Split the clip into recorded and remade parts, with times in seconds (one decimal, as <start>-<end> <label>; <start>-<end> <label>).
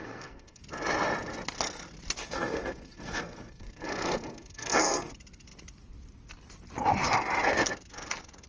0.0-0.6 remade; 0.6-2.2 recorded; 2.2-5.1 remade; 5.1-8.5 recorded